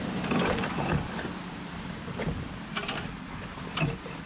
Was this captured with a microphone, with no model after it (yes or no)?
yes